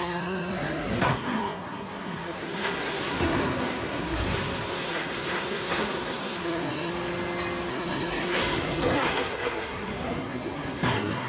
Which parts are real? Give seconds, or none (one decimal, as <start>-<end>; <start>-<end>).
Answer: 6.9-7.7